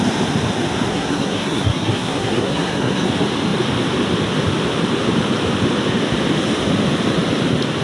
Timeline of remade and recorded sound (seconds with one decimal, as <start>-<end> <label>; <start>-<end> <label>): 0.0-0.9 recorded; 0.9-3.1 remade; 3.1-7.8 recorded

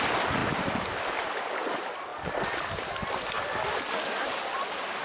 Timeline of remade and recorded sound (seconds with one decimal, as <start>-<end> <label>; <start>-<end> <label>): 0.0-5.0 recorded

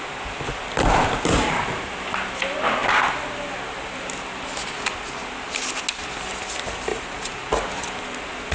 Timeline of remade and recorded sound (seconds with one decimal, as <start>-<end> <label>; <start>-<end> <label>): 0.0-6.9 recorded; 6.9-7.5 remade; 7.5-8.5 recorded

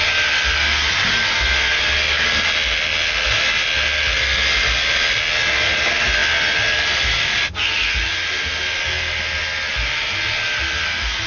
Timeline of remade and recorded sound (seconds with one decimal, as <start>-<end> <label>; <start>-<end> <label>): 0.0-11.3 recorded